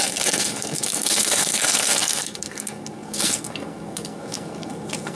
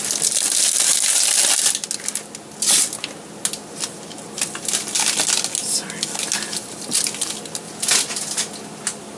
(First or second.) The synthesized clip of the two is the first